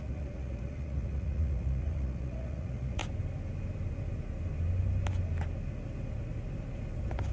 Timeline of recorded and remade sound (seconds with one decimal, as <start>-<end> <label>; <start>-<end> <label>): 0.0-3.0 remade; 3.0-7.3 recorded